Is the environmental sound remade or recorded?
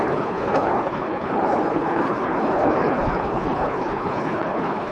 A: remade